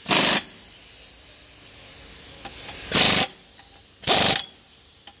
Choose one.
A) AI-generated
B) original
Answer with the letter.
B